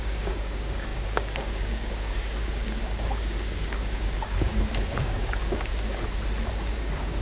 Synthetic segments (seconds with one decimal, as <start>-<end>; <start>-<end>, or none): 0.0-5.7; 6.5-7.2